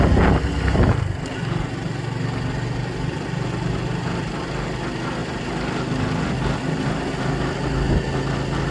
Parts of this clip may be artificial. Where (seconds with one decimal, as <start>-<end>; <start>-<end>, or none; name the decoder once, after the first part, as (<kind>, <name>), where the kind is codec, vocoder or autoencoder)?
none